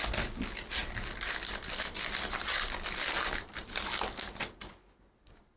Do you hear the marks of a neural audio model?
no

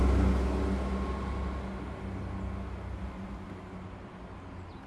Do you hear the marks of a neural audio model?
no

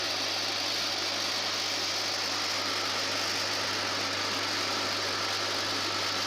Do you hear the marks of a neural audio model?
no